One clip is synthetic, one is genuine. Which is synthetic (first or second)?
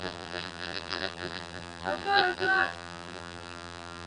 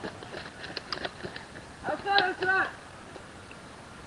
first